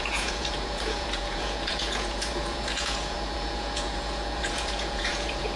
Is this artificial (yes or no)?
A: yes